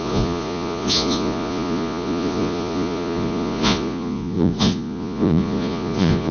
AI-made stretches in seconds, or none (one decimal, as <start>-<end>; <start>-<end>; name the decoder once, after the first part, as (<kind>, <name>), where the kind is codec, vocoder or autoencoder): 0.0-6.3 (vocoder, Vocos)